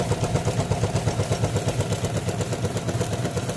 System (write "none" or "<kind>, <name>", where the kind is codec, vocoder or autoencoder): none